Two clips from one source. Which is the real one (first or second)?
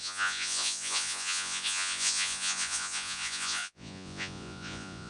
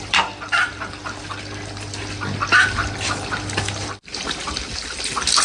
second